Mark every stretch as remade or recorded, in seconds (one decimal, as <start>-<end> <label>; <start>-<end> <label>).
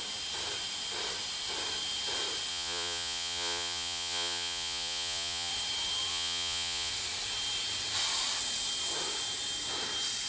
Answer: 0.0-2.5 recorded; 2.5-5.5 remade; 5.5-6.1 recorded; 6.1-6.9 remade; 6.9-10.3 recorded